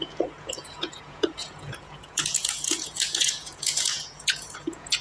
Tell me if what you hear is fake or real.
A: fake